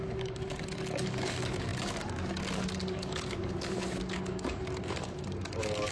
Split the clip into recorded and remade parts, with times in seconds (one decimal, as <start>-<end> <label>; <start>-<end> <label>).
0.0-5.9 remade